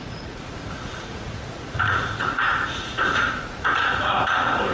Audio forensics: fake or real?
fake